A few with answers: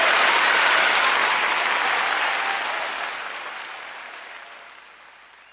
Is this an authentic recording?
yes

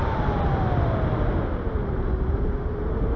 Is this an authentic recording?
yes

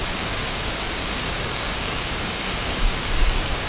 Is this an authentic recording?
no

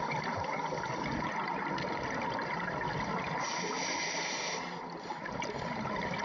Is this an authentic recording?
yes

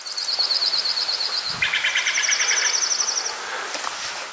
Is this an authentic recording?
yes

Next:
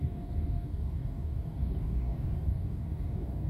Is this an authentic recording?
no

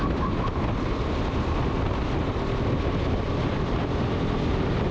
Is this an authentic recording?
yes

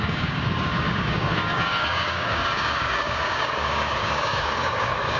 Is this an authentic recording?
no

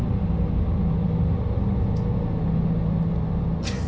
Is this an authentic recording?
yes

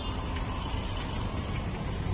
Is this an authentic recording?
yes